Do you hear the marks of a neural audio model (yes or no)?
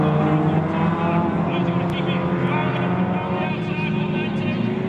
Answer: no